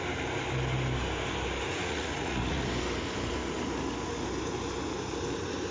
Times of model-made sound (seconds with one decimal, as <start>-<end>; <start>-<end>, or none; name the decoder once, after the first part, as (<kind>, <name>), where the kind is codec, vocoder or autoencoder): 1.8-2.6 (vocoder, Vocos)

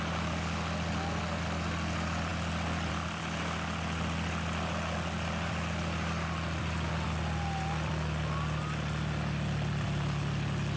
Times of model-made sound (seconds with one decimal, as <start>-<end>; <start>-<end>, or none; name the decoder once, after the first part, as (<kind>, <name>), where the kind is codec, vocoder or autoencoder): none

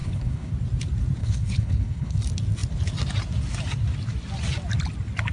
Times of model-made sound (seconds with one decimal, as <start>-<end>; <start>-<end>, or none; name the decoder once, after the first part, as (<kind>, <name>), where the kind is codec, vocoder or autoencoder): 0.0-0.5 (codec, HILCodec); 1.2-2.2

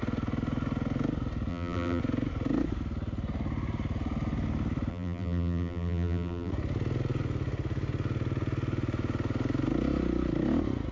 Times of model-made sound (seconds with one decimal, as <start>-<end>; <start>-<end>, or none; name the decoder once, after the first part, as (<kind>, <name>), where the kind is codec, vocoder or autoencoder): 1.5-2.0 (vocoder, BigVGAN v2); 4.9-6.5

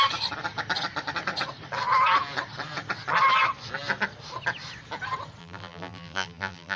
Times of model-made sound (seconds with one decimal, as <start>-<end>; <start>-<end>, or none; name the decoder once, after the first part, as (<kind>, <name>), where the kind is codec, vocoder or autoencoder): 5.4-6.8 (vocoder, BigVGAN v2)

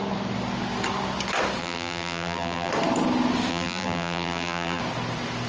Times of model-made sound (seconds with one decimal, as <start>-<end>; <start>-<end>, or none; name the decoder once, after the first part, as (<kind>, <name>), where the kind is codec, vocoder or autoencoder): 1.6-2.7 (vocoder, BigVGAN v2); 3.5-4.8

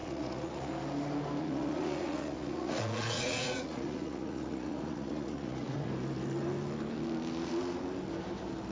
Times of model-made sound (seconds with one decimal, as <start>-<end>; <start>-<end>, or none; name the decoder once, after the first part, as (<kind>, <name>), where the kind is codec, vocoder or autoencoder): 0.0-0.7 (vocoder, Vocos); 1.4-5.9